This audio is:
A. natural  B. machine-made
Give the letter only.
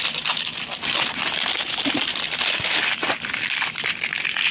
A